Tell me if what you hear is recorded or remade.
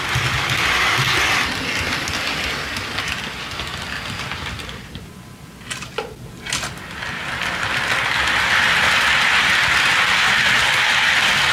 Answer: recorded